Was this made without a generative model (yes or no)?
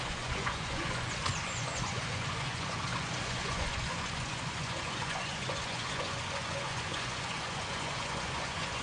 no